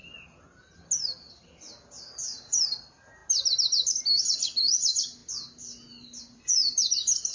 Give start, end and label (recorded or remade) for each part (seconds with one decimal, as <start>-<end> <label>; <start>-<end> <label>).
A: 0.0-2.1 recorded; 2.1-3.2 remade; 3.2-4.2 recorded; 4.2-5.2 remade; 5.2-6.2 recorded; 6.2-7.3 remade